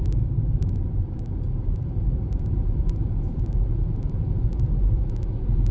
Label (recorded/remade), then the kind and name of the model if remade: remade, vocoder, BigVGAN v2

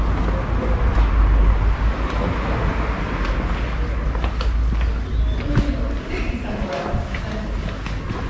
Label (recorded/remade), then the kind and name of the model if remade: recorded